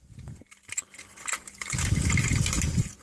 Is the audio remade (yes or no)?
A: no